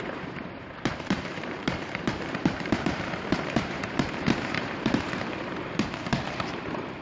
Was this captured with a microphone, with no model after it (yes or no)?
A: no